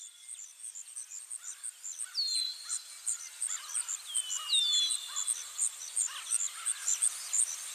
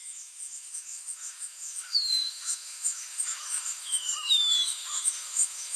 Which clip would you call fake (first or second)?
second